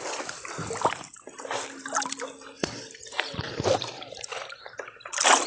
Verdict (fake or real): fake